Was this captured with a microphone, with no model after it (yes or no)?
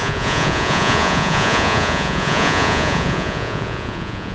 no